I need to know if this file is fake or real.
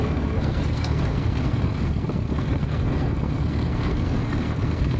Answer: fake